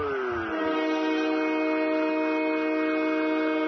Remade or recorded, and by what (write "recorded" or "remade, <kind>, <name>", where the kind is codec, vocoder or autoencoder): recorded